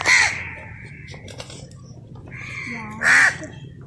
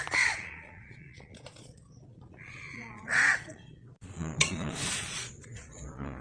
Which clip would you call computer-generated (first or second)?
second